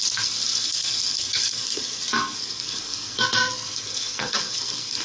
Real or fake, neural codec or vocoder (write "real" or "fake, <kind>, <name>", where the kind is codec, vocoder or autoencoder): fake, codec, SNAC